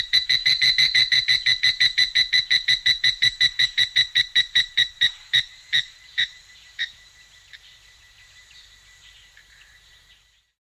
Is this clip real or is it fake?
fake